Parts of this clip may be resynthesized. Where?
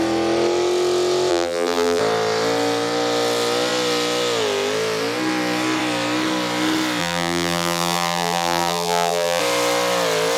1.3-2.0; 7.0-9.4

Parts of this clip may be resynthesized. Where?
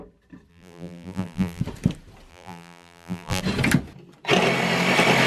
0.5-1.6; 2.3-3.4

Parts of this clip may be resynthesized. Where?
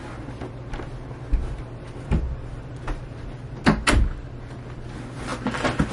1.4-3.9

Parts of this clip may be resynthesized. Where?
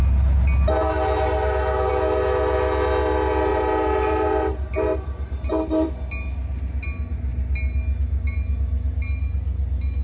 3.5-5.9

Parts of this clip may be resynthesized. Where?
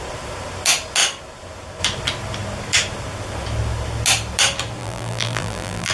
4.8-5.9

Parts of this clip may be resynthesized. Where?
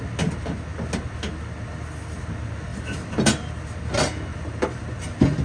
2.7-3.5; 4.3-5.0